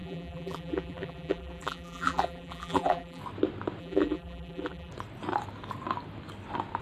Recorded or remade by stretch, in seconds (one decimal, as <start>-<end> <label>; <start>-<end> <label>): 0.0-3.2 remade; 3.2-3.8 recorded; 3.8-4.9 remade; 4.9-6.8 recorded